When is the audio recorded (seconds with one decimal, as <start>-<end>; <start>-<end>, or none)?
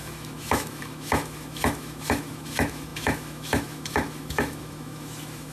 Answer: none